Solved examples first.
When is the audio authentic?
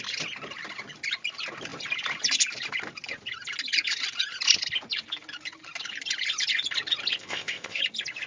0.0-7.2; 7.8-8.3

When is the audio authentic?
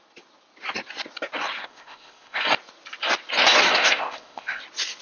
0.0-1.6; 2.4-3.8; 4.6-5.0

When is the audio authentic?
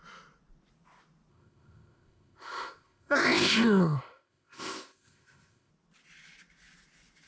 0.0-1.3; 5.7-7.3